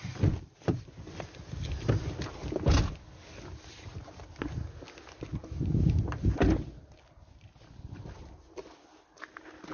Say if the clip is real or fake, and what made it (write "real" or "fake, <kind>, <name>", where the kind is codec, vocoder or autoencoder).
real